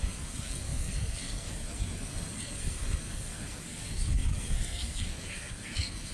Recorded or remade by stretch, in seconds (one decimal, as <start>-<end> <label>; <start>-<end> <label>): 0.0-6.1 remade